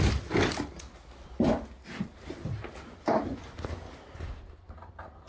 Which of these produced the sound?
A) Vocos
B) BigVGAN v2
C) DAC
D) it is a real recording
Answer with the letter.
D